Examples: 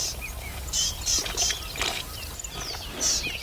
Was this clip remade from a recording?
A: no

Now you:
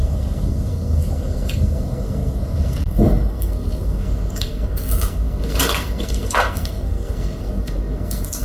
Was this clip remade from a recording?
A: yes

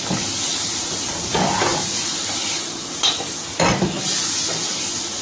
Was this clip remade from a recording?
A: no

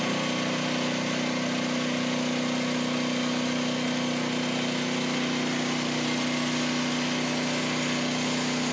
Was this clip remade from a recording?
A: no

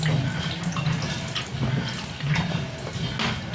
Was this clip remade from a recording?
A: no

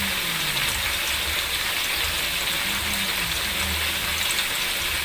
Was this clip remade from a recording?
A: no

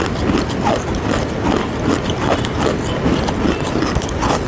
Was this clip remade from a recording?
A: no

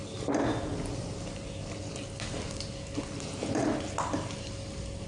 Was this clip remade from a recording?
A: no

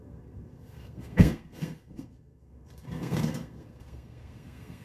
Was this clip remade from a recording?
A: yes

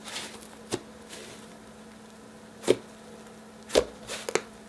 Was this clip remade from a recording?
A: no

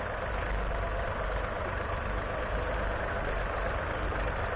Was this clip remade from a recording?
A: no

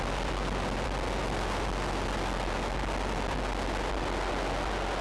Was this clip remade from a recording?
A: no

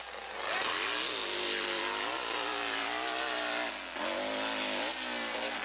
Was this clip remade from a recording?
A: no